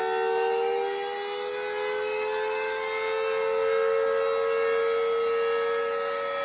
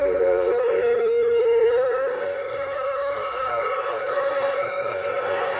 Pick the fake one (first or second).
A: second